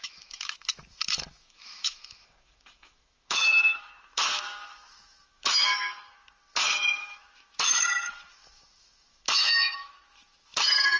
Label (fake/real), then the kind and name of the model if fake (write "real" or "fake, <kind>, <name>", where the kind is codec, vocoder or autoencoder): fake, autoencoder, DAC-VAE